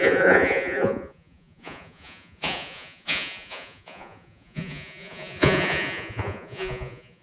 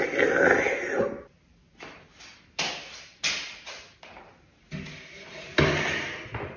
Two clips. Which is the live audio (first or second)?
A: second